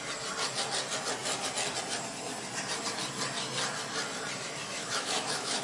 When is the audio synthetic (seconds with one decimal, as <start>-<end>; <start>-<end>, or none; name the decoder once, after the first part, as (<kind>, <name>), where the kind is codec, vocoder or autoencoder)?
4.6-5.6 (autoencoder, DAC-VAE)